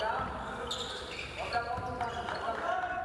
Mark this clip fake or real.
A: real